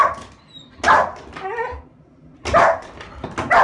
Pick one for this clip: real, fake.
real